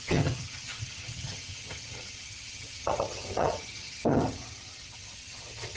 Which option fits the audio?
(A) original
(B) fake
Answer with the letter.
B